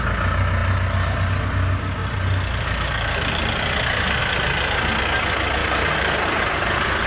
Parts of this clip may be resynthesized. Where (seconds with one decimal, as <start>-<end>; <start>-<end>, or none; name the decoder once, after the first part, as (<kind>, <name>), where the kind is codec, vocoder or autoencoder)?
5.6-6.6 (vocoder, BigVGAN v2)